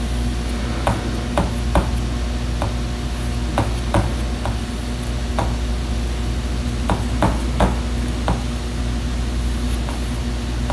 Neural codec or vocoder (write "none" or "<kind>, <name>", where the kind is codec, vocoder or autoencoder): none